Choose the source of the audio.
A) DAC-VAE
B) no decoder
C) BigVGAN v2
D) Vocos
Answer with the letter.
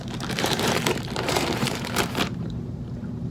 C